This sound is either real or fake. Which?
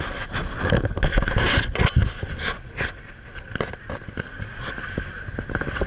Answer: real